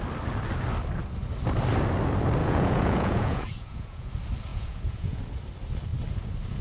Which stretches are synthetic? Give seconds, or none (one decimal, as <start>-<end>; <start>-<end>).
2.4-4.1; 4.5-5.2

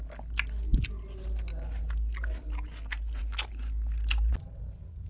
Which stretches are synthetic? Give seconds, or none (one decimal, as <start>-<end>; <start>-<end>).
none

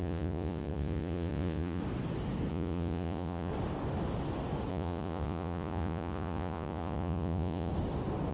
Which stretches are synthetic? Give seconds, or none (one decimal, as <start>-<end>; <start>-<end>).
0.0-1.8; 2.5-3.5; 4.7-7.7

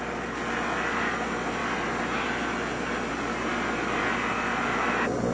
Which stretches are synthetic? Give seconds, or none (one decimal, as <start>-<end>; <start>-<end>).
none

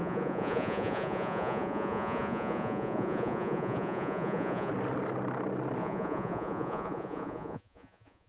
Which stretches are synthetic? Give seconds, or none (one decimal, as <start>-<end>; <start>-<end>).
0.0-4.7; 5.8-8.3

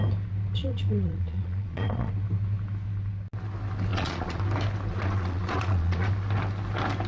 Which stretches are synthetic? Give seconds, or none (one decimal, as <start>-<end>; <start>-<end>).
0.6-2.1; 3.9-4.4; 4.9-6.1